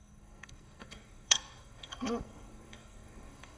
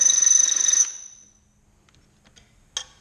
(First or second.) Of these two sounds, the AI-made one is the first